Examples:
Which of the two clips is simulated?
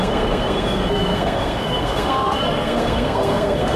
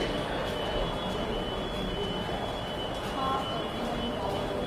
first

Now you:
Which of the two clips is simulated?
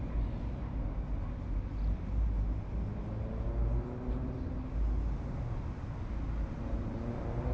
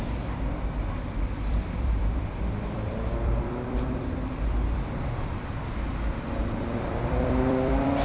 second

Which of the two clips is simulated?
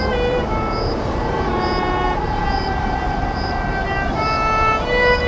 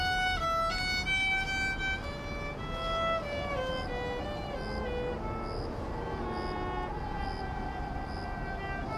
first